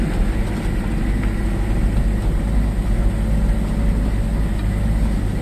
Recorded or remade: recorded